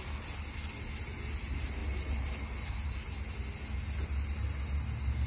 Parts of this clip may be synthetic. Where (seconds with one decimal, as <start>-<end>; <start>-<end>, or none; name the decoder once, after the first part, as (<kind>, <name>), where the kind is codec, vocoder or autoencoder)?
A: none